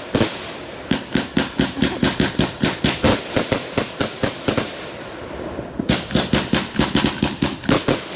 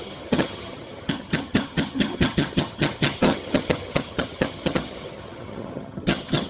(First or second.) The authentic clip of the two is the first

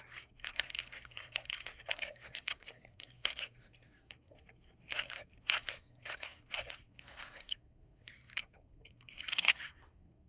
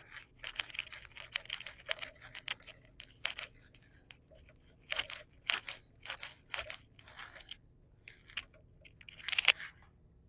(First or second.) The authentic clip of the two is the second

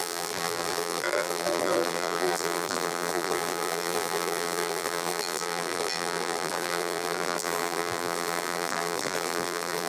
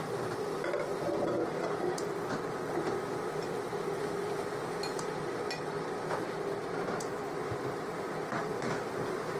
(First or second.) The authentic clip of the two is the second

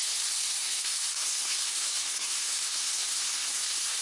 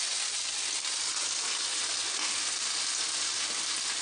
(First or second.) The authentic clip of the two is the second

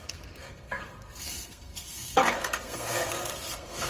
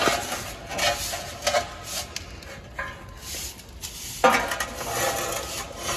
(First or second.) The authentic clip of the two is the second